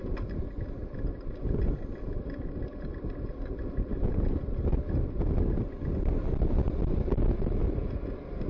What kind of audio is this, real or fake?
real